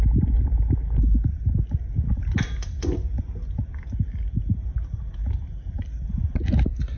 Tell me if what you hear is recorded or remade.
recorded